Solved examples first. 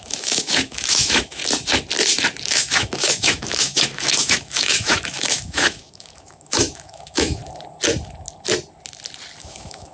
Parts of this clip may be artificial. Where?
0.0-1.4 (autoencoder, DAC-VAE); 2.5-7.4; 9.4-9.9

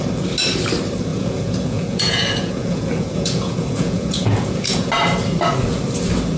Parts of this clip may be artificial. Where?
1.1-4.9 (vocoder, Vocos)

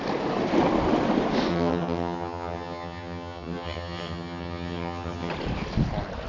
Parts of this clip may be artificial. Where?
1.5-5.3 (vocoder, HiFi-GAN)

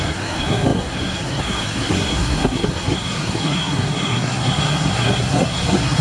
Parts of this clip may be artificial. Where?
0.0-6.0 (codec, SNAC)

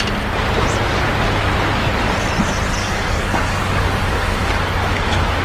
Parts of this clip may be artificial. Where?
2.8-5.4 (codec, DAC)

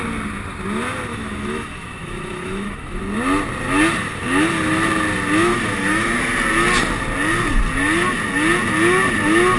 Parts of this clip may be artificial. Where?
1.1-3.0 (autoencoder, DAC-VAE); 5.5-6.2

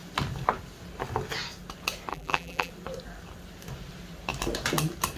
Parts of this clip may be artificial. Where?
2.1-2.7 (vocoder, BigVGAN v2)